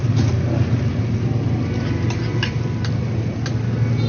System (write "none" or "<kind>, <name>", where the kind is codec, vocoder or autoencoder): none